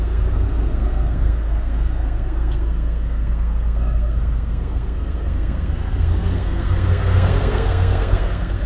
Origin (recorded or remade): remade